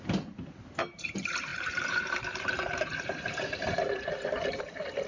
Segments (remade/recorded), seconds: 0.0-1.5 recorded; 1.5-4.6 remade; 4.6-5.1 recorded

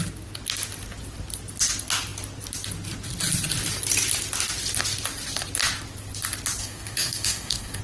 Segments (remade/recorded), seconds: 0.0-6.6 recorded; 6.6-7.8 remade

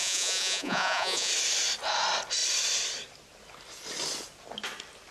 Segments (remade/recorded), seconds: 0.0-1.3 remade; 1.3-5.1 recorded

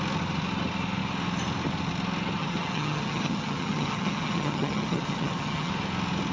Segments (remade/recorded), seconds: 0.0-2.4 recorded; 2.4-5.7 remade; 5.7-6.3 recorded

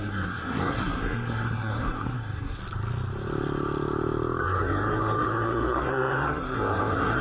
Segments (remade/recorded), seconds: 0.0-2.6 remade; 2.6-4.4 recorded; 4.4-7.2 remade

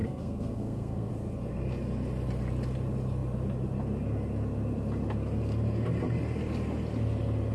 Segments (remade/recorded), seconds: 0.0-1.1 remade; 1.1-7.5 recorded